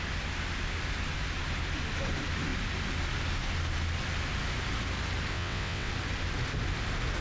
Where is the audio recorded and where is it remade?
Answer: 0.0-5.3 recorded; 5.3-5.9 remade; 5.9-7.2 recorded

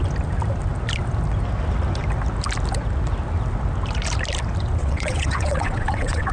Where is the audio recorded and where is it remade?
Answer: 0.0-4.8 recorded; 4.8-6.3 remade

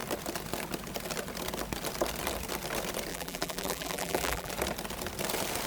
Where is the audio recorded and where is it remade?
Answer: 0.0-3.1 recorded; 3.1-4.5 remade; 4.5-5.7 recorded

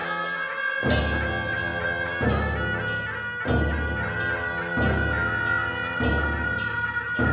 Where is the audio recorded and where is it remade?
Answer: 0.0-7.3 recorded

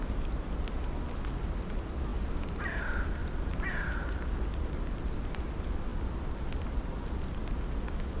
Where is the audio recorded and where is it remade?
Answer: 0.0-3.2 recorded; 3.2-4.0 remade; 4.0-8.2 recorded

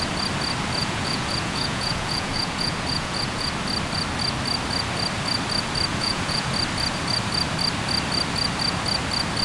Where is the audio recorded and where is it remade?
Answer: 0.0-0.8 recorded; 0.8-3.5 remade; 3.5-5.9 recorded; 5.9-6.5 remade; 6.5-9.4 recorded

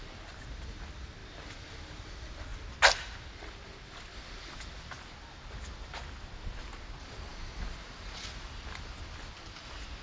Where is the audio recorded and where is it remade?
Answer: 0.0-10.0 recorded